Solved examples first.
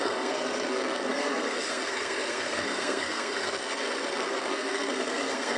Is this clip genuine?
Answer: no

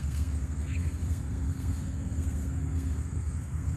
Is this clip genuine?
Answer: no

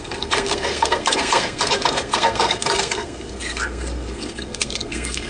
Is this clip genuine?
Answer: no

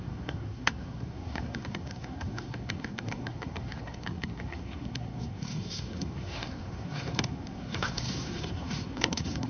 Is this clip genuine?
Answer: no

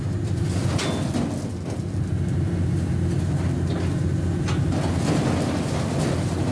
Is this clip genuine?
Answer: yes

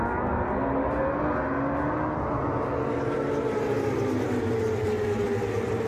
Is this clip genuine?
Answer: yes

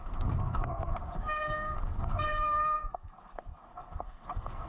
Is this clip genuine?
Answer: no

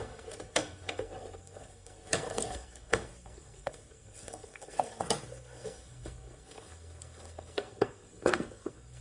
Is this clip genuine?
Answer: no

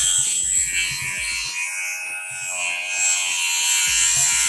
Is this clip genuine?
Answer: yes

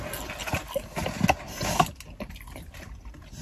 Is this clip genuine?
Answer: yes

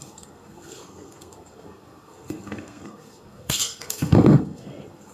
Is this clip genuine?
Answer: no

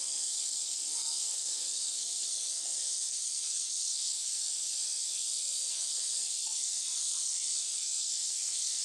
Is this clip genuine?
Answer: no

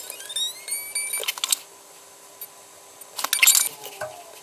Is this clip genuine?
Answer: yes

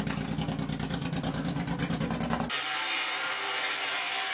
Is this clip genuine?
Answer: yes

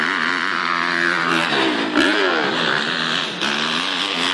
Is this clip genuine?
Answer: yes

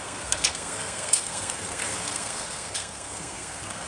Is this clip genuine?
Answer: no